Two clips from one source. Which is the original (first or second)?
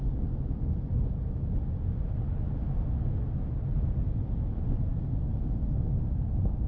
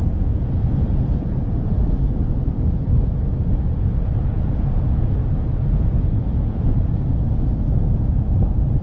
first